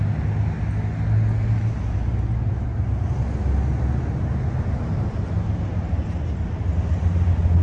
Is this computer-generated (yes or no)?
no